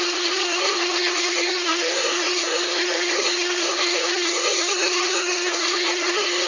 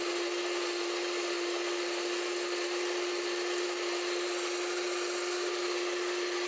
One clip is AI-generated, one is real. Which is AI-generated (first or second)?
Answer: first